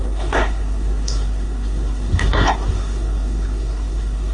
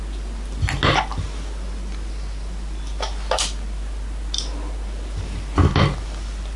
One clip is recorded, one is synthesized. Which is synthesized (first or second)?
first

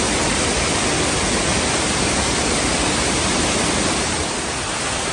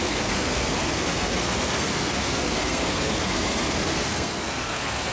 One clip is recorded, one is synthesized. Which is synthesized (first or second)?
second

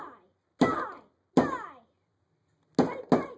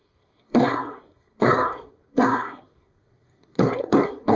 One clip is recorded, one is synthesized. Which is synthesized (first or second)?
second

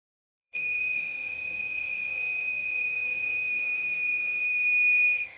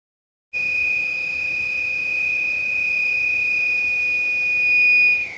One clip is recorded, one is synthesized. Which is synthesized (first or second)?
first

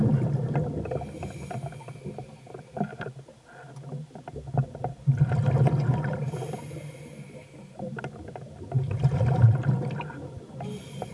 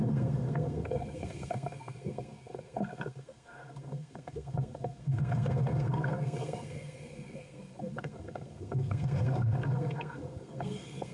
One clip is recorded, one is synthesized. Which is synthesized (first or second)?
second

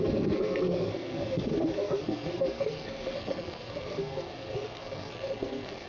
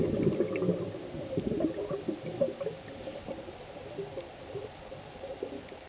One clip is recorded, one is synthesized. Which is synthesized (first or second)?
first